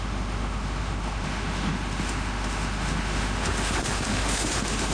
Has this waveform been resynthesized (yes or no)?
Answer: yes